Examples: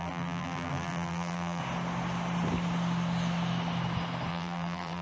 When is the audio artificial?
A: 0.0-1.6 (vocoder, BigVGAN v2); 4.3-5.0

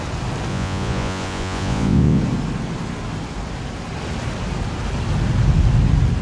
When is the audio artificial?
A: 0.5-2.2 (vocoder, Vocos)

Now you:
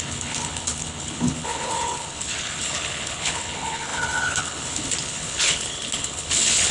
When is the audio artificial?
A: 0.0-6.7 (codec, HILCodec)

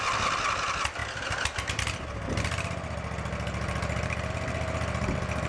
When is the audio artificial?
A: none

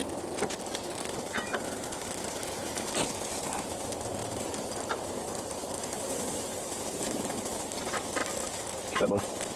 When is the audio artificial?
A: 0.6-4.2 (vocoder, BigVGAN v2); 4.8-8.2; 9.2-9.6

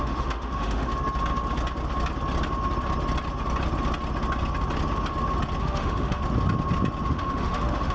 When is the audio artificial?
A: 0.0-0.9 (autoencoder, DAC-VAE); 5.6-6.2; 7.1-7.9

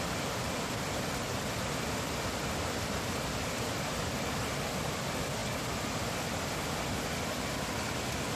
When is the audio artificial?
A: none